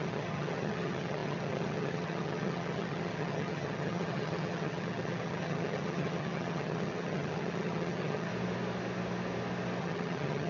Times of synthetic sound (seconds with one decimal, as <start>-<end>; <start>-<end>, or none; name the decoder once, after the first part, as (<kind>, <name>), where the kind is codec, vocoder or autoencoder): 0.0-8.3 (vocoder, HiFi-GAN); 9.8-10.5